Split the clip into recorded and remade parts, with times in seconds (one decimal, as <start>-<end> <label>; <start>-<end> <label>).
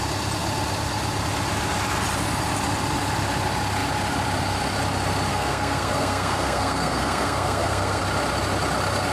0.0-5.3 recorded; 5.3-8.0 remade; 8.0-9.1 recorded